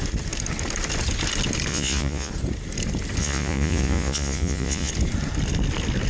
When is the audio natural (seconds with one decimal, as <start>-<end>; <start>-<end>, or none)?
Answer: 0.0-1.7; 2.3-3.2; 4.9-6.1